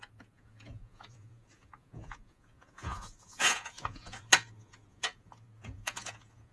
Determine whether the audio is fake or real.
fake